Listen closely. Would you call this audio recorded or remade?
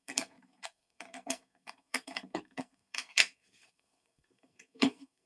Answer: remade